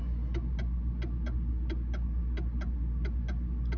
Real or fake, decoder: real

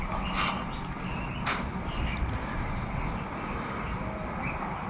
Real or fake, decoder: real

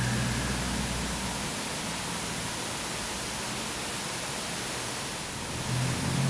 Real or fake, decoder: real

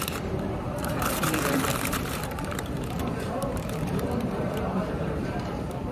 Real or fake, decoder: fake, vocoder, BigVGAN v2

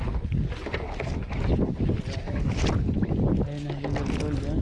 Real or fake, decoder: real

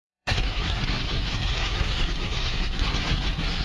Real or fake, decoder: fake, codec, SNAC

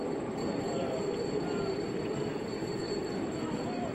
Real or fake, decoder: fake, vocoder, BigVGAN v2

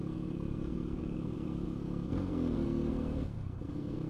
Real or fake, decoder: fake, codec, SNAC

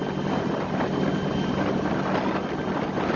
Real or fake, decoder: real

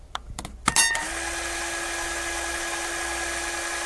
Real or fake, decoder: real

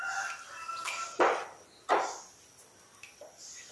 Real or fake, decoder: real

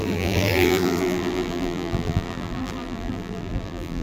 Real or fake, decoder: fake, vocoder, BigVGAN v2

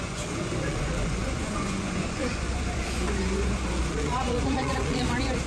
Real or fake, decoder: fake, vocoder, Vocos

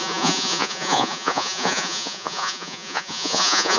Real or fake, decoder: fake, vocoder, Vocos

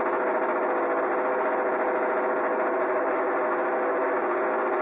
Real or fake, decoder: real